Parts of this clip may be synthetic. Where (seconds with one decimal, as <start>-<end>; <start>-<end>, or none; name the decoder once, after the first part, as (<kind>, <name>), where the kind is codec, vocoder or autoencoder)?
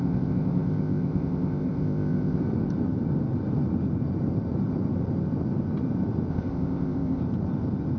0.0-2.4 (codec, ZipCodec); 6.3-7.2